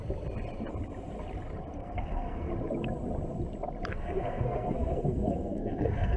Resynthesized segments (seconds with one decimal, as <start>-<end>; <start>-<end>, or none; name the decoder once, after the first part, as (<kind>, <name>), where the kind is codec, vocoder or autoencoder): 1.8-2.5 (codec, SNAC); 3.9-6.2